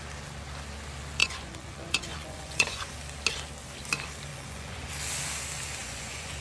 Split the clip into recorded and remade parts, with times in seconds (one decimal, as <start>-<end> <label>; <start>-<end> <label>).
0.0-1.2 recorded; 1.2-2.9 remade; 2.9-4.3 recorded; 4.3-4.9 remade; 4.9-5.8 recorded; 5.8-6.4 remade